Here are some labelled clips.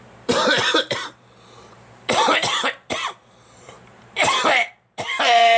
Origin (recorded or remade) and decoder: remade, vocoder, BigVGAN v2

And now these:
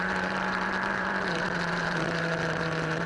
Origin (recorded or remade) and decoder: remade, vocoder, BigVGAN v2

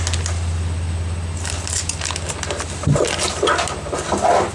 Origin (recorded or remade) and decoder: recorded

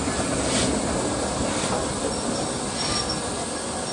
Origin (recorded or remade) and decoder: recorded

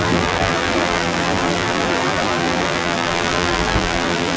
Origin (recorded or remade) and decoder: remade, vocoder, BigVGAN v2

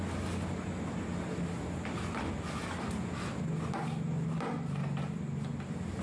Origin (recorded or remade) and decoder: recorded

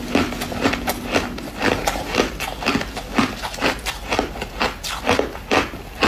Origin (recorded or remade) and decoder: recorded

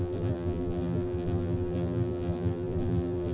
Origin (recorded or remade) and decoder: remade, vocoder, BigVGAN v2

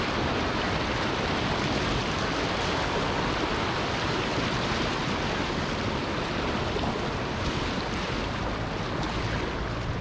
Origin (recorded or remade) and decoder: recorded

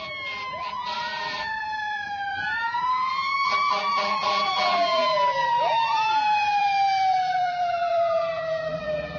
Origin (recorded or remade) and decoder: remade, vocoder, BigVGAN v2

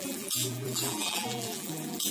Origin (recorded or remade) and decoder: remade, vocoder, BigVGAN v2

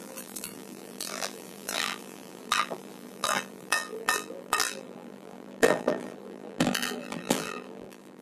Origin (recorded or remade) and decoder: remade, vocoder, BigVGAN v2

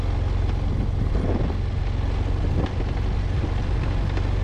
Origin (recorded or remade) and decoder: recorded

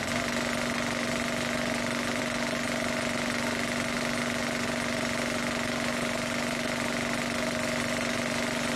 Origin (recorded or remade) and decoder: recorded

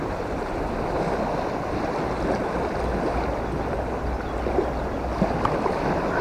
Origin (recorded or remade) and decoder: recorded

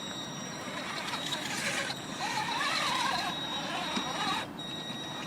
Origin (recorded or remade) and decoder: remade, vocoder, BigVGAN v2